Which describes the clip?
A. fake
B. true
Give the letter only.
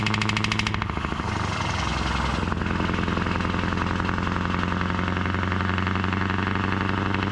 B